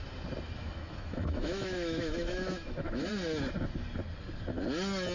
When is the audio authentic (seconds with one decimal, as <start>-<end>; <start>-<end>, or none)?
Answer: 0.0-0.6; 3.1-5.1